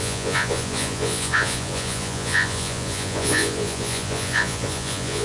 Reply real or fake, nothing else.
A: fake